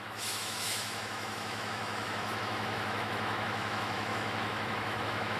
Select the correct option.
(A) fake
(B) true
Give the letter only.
A